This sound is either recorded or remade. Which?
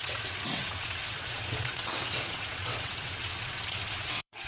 remade